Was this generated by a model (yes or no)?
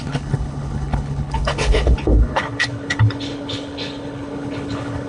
yes